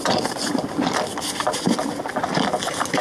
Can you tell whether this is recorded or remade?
recorded